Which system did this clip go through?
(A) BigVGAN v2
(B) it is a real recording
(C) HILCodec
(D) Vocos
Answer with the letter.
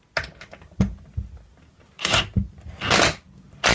B